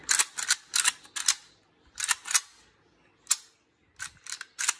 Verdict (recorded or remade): recorded